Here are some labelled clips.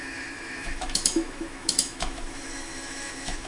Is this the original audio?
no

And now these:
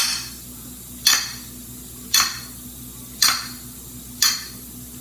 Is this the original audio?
yes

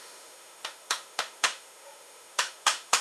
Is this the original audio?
no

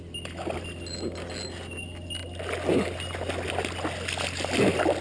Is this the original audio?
yes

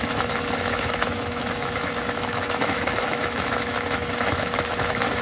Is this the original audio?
no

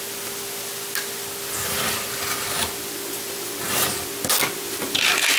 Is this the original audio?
yes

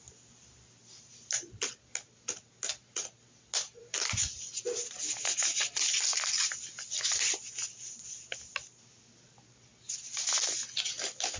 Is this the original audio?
yes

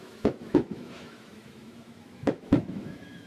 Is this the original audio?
no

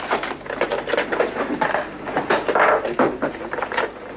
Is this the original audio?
yes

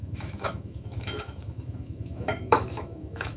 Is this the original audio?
no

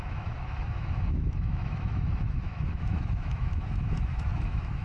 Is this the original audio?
no